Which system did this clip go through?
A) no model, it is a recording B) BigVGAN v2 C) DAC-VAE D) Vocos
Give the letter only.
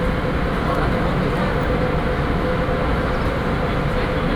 A